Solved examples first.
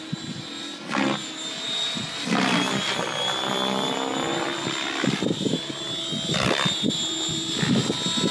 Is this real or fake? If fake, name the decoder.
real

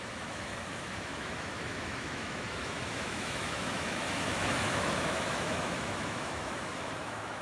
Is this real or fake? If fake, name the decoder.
fake, autoencoder, DAC-VAE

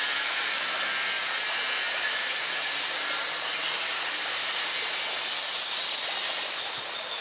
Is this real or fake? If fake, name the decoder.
real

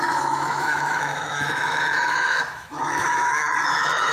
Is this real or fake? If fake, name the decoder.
fake, autoencoder, DAC-VAE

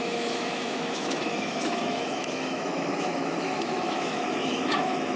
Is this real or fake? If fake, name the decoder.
fake, autoencoder, DAC-VAE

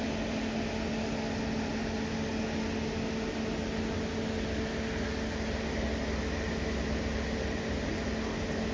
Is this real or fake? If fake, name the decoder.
real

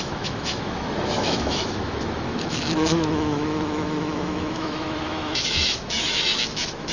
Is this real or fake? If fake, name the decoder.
fake, autoencoder, DAC-VAE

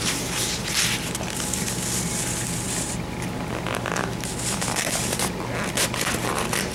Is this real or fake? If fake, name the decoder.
real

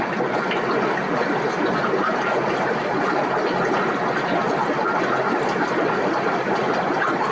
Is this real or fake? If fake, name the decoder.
real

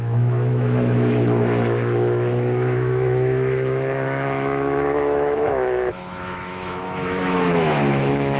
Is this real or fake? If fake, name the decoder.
fake, autoencoder, DAC-VAE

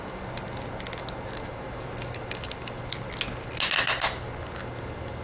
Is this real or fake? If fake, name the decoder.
real